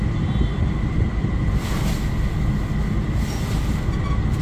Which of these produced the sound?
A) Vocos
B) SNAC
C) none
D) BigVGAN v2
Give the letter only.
C